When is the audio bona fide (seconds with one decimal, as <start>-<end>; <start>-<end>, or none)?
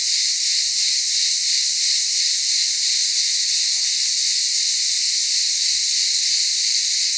0.0-7.2